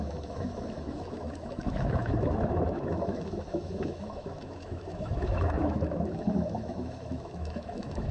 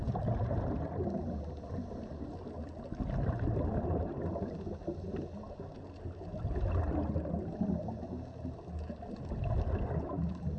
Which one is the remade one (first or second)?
first